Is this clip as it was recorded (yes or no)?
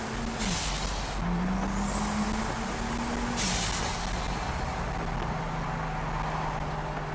yes